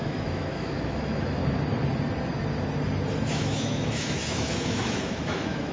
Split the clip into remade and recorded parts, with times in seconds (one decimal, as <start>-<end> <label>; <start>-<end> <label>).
0.0-1.4 remade; 1.4-3.3 recorded; 3.3-5.7 remade